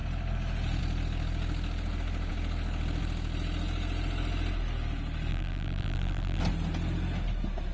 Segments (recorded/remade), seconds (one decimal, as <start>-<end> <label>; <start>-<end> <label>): 0.0-5.3 recorded; 5.3-6.4 remade; 6.4-7.7 recorded